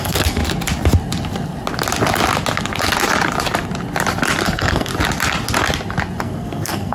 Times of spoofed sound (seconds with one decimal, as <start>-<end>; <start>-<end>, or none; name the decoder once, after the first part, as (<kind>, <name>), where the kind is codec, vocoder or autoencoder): 0.0-0.4 (codec, SNAC); 4.4-4.9; 6.2-6.9